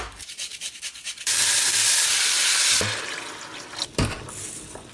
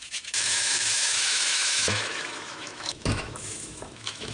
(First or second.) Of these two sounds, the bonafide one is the first